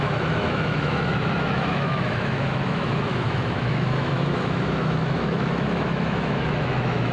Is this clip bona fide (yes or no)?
no